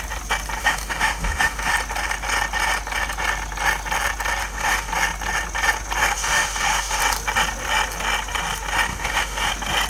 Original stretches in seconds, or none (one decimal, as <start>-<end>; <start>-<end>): 0.0-0.6; 1.7-4.4; 4.9-6.0; 7.0-8.9; 9.5-9.9